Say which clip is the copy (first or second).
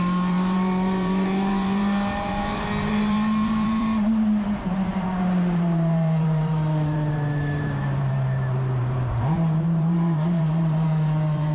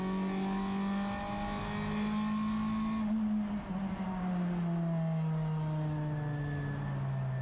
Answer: first